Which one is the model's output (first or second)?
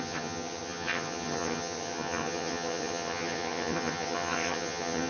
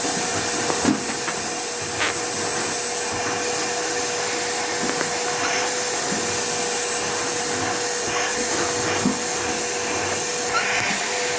first